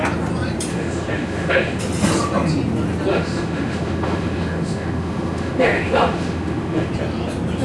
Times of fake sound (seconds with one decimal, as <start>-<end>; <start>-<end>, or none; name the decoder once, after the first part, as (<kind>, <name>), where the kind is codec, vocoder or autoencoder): 0.7-1.8 (autoencoder, DAC-VAE); 3.1-6.9